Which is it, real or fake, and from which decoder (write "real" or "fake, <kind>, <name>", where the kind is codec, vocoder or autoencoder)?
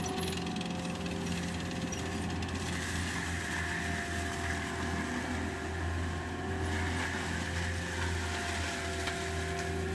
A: real